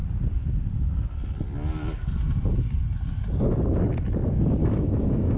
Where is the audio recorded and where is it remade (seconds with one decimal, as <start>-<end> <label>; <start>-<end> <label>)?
0.0-4.6 recorded; 4.6-5.4 remade